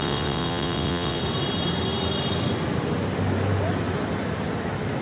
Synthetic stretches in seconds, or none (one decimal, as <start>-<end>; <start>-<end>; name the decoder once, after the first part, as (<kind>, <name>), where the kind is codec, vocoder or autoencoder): 0.0-1.2 (vocoder, WaveNeXt)